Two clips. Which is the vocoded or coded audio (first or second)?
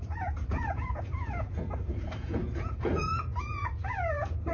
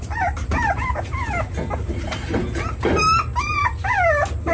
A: first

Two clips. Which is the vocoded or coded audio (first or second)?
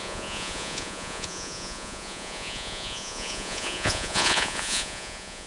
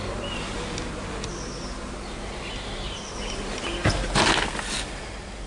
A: first